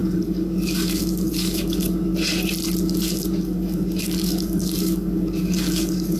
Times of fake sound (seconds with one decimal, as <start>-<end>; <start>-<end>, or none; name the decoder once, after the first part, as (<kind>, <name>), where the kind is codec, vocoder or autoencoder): 0.0-2.1 (codec, DAC); 2.8-6.2